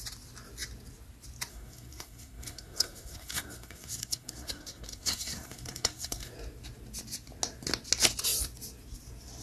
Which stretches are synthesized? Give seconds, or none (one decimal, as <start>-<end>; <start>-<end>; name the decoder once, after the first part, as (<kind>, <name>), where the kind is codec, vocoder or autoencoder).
1.5-6.3 (codec, SNAC)